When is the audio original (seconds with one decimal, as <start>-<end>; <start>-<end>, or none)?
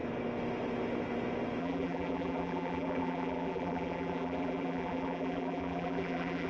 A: 0.0-1.6